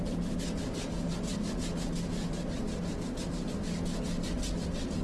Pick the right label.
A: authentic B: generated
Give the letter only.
A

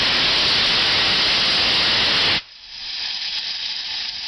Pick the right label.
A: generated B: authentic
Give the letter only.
B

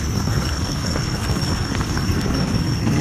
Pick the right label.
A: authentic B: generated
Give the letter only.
B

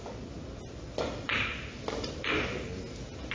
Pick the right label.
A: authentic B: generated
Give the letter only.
A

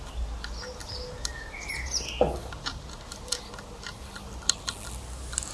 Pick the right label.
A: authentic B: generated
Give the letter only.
A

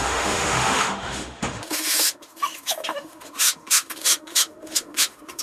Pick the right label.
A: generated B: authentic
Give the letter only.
A